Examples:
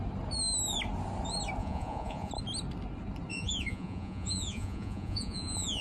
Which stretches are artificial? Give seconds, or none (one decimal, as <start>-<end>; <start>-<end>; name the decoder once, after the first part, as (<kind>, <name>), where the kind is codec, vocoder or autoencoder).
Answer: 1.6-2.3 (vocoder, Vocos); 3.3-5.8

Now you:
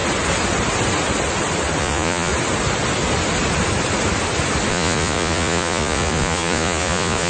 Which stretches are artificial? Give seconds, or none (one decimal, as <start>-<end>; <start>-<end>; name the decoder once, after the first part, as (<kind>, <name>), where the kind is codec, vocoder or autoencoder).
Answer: 1.8-2.3 (vocoder, Vocos); 4.7-7.3

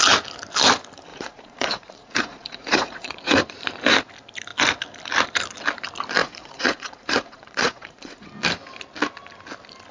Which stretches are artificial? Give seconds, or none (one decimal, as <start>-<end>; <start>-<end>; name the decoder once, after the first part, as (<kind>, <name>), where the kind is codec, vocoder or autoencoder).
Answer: 1.1-3.5 (vocoder, Vocos); 6.2-8.3

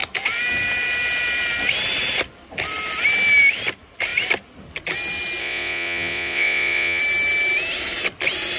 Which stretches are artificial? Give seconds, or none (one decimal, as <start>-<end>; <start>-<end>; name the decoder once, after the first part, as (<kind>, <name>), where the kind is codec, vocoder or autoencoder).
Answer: 5.4-7.0 (vocoder, Vocos)

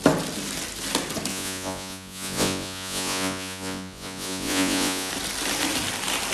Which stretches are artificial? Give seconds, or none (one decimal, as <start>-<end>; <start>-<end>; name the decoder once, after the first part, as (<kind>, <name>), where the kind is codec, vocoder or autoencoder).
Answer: 1.3-5.1 (vocoder, Vocos)

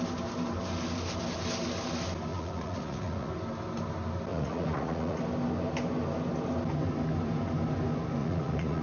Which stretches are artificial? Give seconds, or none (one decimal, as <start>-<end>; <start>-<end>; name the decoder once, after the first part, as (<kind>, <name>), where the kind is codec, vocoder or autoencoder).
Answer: 2.3-3.3 (vocoder, Vocos); 4.3-5.2; 8.2-8.8